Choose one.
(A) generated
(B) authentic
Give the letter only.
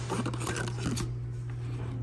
B